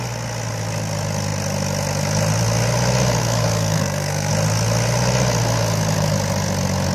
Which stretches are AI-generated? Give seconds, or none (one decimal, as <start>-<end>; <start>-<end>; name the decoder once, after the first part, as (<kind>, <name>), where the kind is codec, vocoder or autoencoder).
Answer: 3.2-4.3 (codec, SNAC)

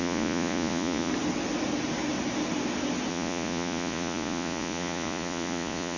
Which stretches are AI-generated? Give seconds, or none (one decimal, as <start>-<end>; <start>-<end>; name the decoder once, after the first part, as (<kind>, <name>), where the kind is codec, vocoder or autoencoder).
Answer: 0.0-1.1 (vocoder, Vocos); 3.1-6.0